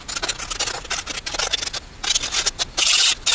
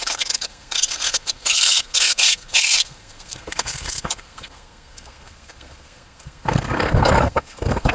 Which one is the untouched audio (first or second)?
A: first